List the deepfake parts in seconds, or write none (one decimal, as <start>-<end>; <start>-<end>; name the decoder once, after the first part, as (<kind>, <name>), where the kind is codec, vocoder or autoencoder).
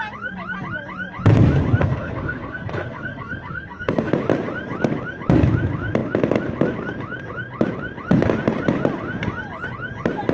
1.8-4.1 (codec, SNAC)